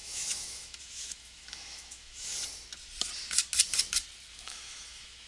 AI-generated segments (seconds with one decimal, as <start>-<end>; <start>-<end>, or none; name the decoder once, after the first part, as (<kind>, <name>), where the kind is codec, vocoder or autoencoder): 0.0-2.3 (autoencoder, DAC-VAE); 4.3-5.3